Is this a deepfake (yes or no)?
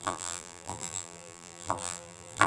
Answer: yes